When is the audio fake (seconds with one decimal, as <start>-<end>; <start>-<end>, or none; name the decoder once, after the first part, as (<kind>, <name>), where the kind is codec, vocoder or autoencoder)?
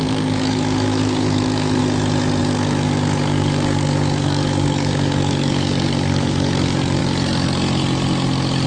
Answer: 0.0-1.8 (codec, DAC); 2.4-7.0